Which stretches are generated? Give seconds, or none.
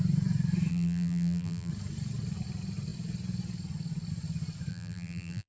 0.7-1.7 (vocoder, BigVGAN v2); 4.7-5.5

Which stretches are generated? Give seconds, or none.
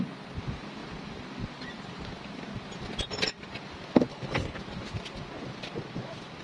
4.1-4.6 (codec, HILCodec)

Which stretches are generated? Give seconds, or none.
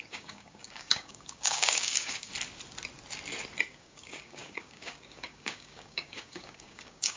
0.0-2.3 (codec, DAC); 3.6-7.2